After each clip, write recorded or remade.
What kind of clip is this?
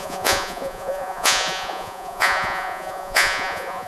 remade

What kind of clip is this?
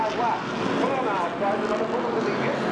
recorded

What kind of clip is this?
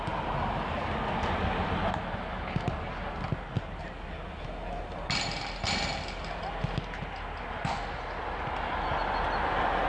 recorded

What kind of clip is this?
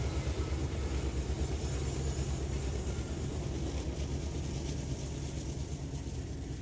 recorded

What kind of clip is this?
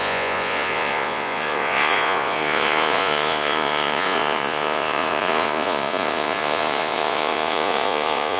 remade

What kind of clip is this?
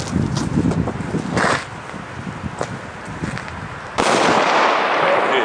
recorded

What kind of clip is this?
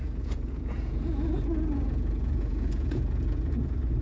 remade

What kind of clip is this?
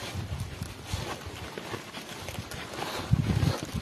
recorded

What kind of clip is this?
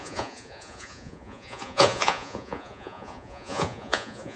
remade